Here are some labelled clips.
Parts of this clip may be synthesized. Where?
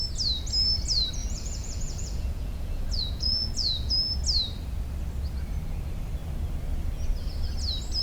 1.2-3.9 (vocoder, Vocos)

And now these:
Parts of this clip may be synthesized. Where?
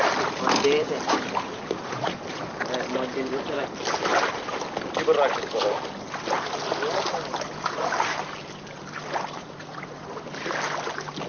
1.5-2.2 (vocoder, Vocos); 9.4-10.1